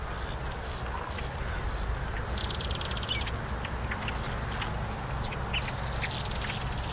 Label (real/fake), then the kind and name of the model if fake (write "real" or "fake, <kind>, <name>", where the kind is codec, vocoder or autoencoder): real